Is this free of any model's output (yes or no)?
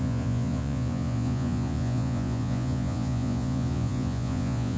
no